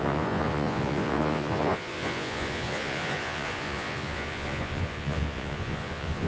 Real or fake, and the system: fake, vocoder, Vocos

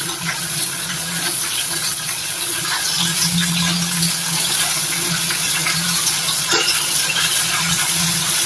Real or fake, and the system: fake, vocoder, Vocos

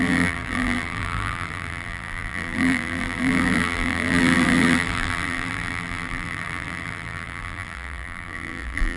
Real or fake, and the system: fake, vocoder, BigVGAN v2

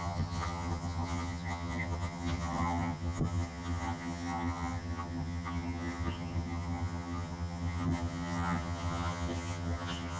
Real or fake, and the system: fake, vocoder, HiFi-GAN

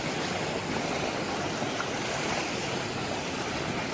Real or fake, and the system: real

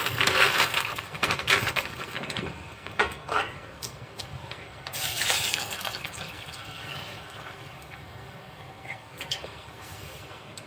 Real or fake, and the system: fake, codec, SNAC